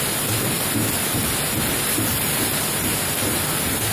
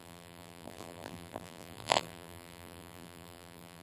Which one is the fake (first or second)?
second